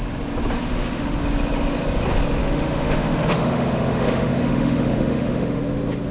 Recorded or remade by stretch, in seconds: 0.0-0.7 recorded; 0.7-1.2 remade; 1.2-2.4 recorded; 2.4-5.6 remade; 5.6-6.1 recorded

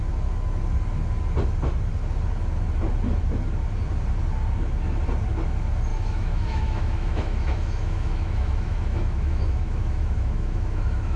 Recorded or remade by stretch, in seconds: 0.0-5.9 recorded; 5.9-11.2 remade

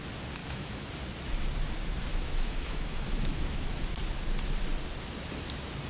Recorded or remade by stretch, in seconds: 0.0-0.4 recorded; 0.4-0.9 remade; 0.9-2.1 recorded; 2.1-3.8 remade; 3.8-5.9 recorded

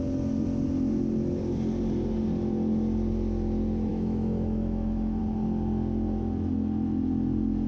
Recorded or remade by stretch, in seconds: 0.0-3.9 recorded; 3.9-5.2 remade; 5.2-7.7 recorded